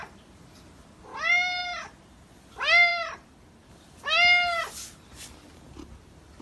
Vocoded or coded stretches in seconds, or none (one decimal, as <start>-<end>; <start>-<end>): none